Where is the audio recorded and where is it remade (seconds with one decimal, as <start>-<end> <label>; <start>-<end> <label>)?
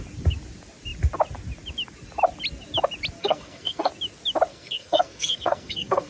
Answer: 0.0-3.2 recorded; 3.2-3.9 remade; 3.9-4.5 recorded; 4.5-6.1 remade